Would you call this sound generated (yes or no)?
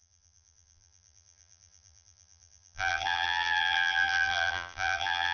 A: yes